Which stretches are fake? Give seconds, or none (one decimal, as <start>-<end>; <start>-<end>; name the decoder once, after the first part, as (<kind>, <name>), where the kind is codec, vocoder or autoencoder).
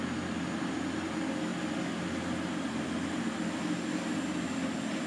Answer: none